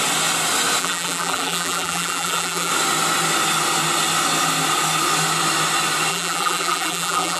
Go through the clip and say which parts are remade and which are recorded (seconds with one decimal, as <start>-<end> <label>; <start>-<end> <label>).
0.0-0.8 recorded; 0.8-2.7 remade; 2.7-6.1 recorded; 6.1-7.4 remade